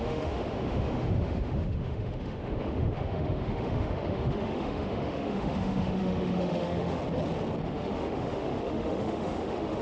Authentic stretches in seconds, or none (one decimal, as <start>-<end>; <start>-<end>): 7.0-7.7